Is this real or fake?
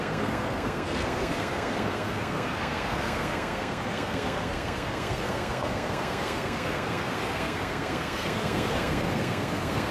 fake